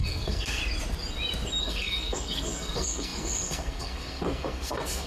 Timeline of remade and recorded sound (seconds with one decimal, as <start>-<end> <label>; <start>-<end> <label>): 0.0-0.6 remade; 0.6-1.6 recorded; 1.6-5.1 remade